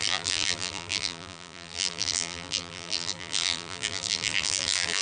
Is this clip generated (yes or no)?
yes